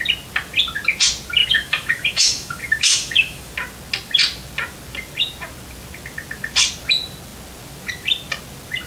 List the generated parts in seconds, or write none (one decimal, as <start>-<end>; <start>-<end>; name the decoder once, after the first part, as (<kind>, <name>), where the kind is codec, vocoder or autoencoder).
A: 1.4-3.5 (autoencoder, DAC-VAE)